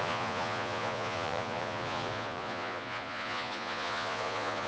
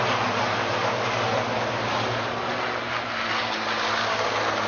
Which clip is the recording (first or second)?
second